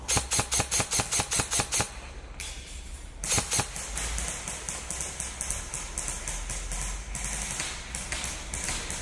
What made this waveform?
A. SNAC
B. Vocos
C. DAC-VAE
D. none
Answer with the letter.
D